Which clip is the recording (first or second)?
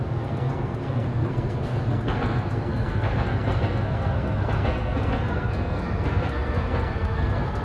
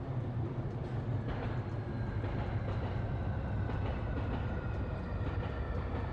second